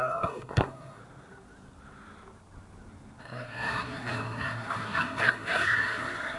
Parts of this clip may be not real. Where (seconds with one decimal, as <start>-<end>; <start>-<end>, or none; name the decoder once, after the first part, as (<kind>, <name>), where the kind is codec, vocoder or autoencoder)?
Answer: 0.0-1.0 (codec, SNAC); 3.2-6.4